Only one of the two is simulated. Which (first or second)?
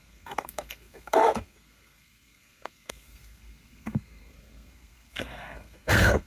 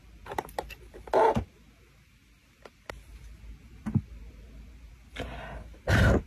first